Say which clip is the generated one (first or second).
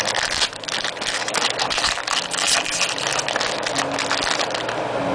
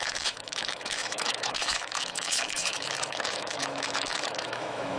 second